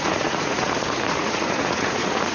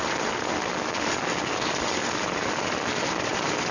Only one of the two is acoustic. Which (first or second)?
second